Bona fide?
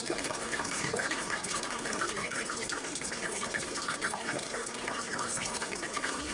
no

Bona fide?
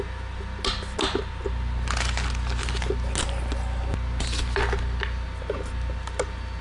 yes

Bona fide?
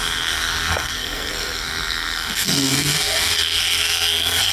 no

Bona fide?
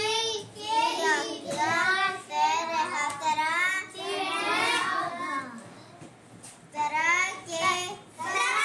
yes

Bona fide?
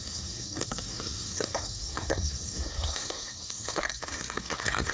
no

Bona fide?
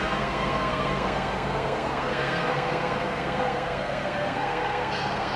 no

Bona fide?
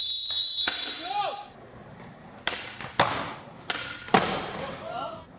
yes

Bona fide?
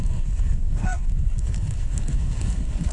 no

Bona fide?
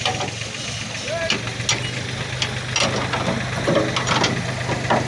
yes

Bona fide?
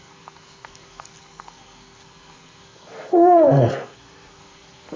no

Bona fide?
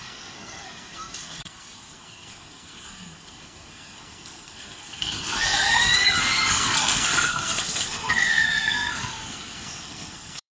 no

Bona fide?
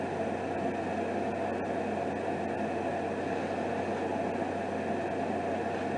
yes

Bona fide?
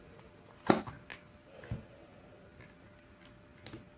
yes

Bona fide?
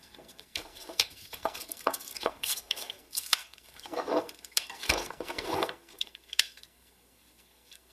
no